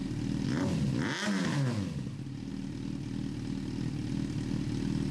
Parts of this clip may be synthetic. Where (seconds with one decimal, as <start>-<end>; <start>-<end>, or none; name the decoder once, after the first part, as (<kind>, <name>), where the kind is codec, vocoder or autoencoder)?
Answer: none